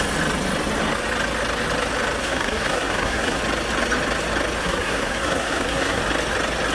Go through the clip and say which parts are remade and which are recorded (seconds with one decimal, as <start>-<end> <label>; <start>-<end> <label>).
0.0-2.2 recorded; 2.2-3.4 remade; 3.4-4.6 recorded; 4.6-6.0 remade; 6.0-6.7 recorded